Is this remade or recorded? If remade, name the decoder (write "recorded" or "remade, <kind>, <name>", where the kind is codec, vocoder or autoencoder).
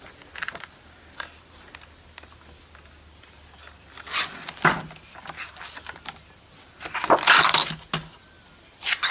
recorded